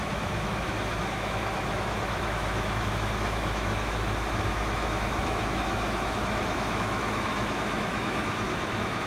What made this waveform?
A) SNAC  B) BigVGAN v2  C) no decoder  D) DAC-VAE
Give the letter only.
D